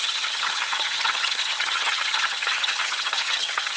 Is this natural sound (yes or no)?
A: no